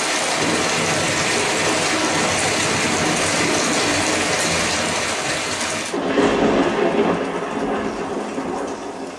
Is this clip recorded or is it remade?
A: recorded